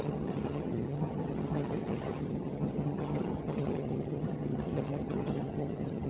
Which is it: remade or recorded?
remade